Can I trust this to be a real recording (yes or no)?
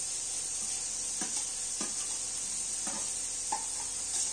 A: yes